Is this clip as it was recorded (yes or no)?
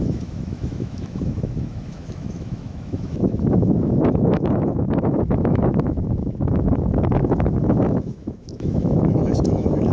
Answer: no